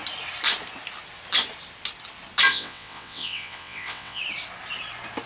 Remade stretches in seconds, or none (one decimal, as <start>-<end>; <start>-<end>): 2.5-4.2